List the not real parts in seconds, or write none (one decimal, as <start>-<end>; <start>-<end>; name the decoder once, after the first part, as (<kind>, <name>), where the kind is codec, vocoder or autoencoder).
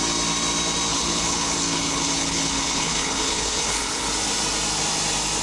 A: 0.9-4.1 (codec, HILCodec)